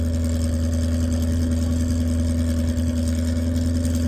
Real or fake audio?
real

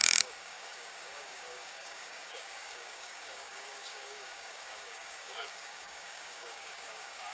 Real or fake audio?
fake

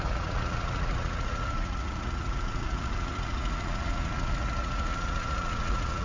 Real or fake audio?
fake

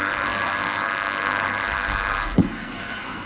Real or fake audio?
fake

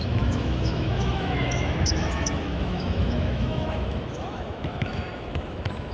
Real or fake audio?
fake